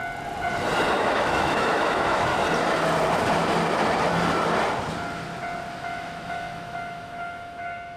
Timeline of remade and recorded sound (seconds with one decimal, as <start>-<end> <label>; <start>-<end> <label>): 0.0-1.0 recorded; 1.0-2.3 remade; 2.3-5.7 recorded; 5.7-8.0 remade

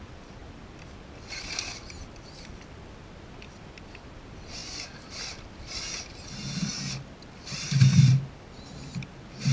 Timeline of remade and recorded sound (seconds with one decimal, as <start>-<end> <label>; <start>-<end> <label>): 0.0-9.5 recorded

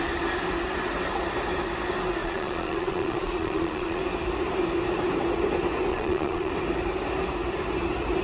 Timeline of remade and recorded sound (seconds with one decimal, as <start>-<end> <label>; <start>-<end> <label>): 0.0-2.2 recorded; 2.2-4.0 remade; 4.0-5.9 recorded; 5.9-6.5 remade; 6.5-8.2 recorded

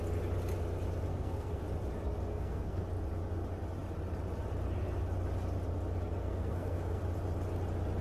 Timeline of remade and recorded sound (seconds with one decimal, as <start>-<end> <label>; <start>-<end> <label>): 0.0-1.1 recorded; 1.1-1.6 remade; 1.6-2.3 recorded; 2.3-2.8 remade; 2.8-6.2 recorded; 6.2-7.0 remade; 7.0-8.0 recorded

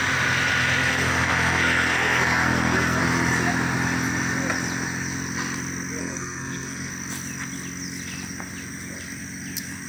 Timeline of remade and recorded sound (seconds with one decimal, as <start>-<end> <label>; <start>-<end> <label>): 0.0-0.9 recorded; 0.9-3.0 remade; 3.0-6.0 recorded; 6.0-6.9 remade; 6.9-9.9 recorded

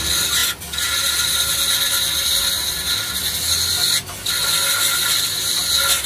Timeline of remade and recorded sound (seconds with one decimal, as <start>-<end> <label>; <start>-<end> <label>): 0.0-6.1 recorded